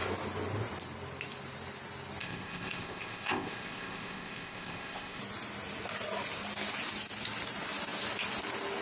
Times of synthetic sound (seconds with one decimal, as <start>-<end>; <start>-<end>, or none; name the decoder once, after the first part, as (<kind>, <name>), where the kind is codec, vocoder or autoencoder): 2.2-5.2 (codec, ZipCodec)